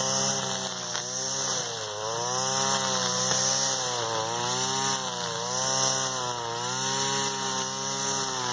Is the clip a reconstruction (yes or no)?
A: no